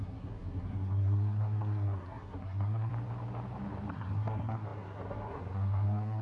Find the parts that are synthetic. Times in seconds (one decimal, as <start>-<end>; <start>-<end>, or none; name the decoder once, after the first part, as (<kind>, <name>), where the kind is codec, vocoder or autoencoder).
0.0-2.9 (codec, SNAC); 3.9-6.2